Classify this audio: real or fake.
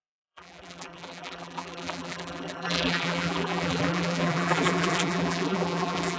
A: fake